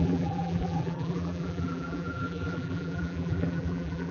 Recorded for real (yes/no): no